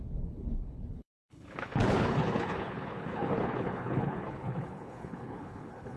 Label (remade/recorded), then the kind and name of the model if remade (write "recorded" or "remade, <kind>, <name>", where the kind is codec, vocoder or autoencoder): remade, codec, HILCodec